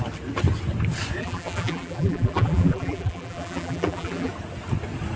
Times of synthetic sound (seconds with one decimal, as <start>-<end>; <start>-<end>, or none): 1.2-4.3